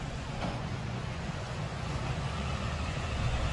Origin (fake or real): fake